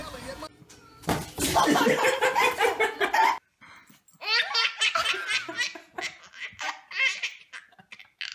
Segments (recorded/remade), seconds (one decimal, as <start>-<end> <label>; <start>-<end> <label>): 0.0-1.8 remade; 1.8-8.3 recorded